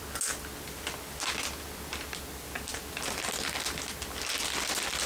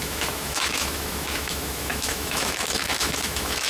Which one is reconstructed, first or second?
second